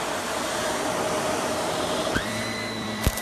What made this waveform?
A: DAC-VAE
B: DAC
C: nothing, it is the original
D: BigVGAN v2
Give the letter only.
D